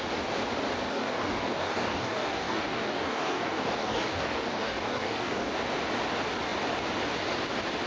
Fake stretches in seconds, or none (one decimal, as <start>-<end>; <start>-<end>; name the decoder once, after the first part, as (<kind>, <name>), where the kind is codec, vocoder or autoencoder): 0.9-5.5 (codec, DAC)